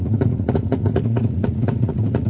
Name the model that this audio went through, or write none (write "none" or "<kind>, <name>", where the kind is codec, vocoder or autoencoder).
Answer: vocoder, Vocos